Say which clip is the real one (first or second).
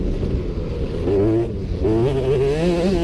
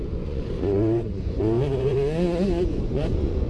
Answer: first